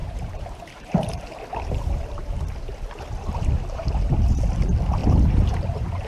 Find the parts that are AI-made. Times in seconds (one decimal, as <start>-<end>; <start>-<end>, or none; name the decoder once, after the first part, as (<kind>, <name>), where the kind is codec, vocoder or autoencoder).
0.0-1.7 (vocoder, BigVGAN v2); 3.3-4.4; 5.0-6.1